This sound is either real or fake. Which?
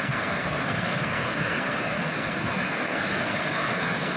fake